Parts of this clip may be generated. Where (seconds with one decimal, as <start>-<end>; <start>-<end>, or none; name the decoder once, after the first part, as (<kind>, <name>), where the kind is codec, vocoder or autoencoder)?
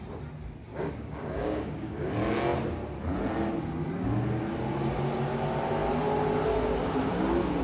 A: 0.7-2.1 (codec, DAC)